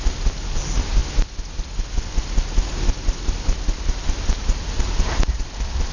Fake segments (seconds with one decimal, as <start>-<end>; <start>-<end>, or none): none